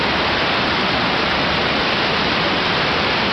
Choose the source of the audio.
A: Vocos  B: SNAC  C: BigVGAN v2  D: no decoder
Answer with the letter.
C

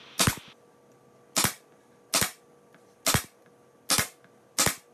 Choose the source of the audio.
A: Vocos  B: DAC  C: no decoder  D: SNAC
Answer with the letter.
C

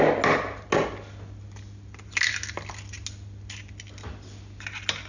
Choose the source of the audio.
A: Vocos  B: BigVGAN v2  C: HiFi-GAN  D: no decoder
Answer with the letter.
D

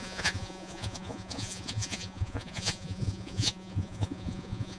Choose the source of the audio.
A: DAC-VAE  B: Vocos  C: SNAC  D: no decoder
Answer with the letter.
B